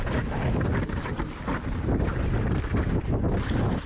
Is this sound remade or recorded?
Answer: recorded